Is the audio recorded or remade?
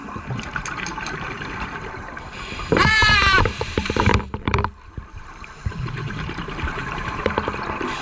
remade